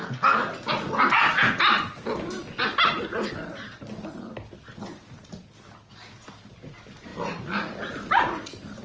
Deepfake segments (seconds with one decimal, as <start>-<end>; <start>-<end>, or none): none